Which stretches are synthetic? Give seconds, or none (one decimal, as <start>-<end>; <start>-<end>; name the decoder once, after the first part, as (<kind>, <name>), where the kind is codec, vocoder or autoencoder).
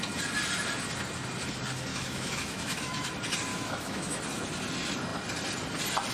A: 1.9-3.1 (autoencoder, DAC-VAE); 3.5-4.2